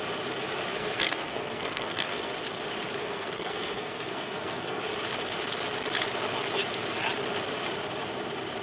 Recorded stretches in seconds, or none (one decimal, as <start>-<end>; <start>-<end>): 0.0-0.7; 2.3-3.0; 4.8-8.6